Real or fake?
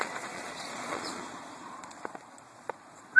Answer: fake